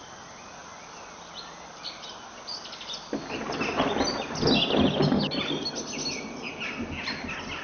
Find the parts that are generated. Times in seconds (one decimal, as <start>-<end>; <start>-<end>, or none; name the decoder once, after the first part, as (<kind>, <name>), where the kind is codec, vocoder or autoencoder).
none